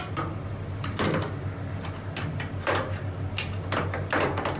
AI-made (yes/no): no